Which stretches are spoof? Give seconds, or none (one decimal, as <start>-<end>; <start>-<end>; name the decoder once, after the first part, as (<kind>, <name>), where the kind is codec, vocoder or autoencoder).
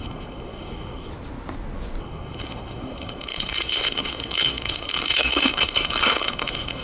0.0-1.1 (codec, SNAC); 2.0-6.8